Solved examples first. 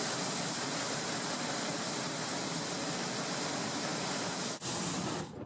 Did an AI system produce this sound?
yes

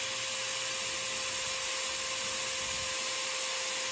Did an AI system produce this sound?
no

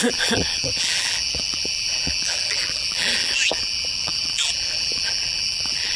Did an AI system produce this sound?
yes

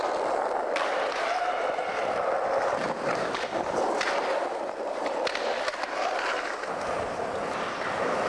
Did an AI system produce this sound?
yes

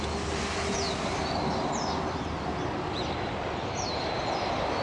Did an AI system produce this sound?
no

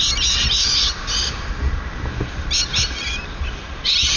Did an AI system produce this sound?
no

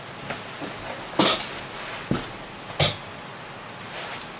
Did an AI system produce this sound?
no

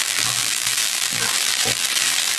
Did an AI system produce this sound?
yes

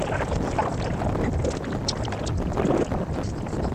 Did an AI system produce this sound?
no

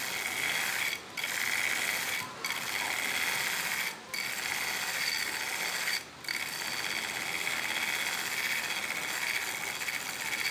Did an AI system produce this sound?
no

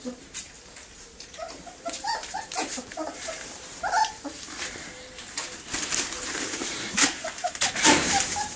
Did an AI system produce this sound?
yes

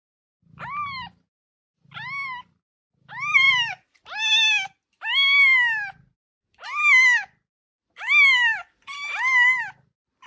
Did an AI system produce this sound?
no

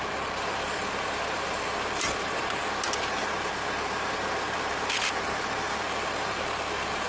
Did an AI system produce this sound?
yes